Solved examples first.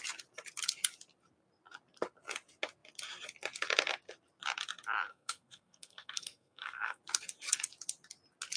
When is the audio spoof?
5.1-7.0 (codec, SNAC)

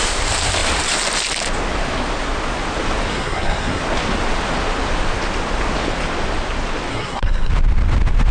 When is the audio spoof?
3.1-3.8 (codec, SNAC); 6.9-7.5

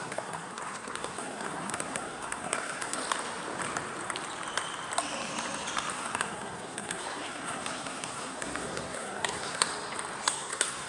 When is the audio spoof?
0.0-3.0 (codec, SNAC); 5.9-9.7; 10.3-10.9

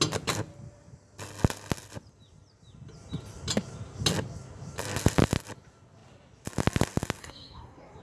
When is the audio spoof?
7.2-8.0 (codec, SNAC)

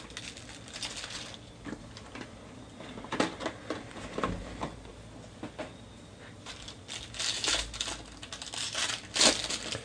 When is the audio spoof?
none

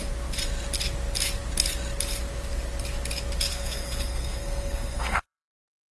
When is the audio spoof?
3.5-5.9 (codec, SNAC)